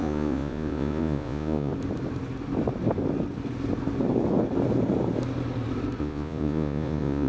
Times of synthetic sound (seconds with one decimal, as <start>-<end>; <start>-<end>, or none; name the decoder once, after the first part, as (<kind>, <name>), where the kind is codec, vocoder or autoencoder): 0.0-1.7 (vocoder, Vocos); 6.0-7.3